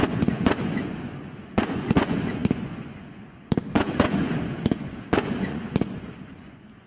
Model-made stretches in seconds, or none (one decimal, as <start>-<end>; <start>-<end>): 0.0-6.9